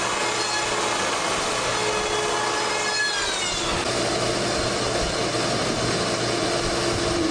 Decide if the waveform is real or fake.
real